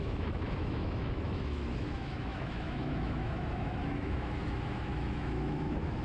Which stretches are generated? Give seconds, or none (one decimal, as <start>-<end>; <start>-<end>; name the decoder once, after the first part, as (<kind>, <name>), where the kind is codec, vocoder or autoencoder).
0.0-6.0 (autoencoder, DAC-VAE)